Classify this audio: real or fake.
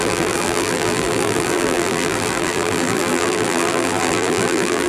fake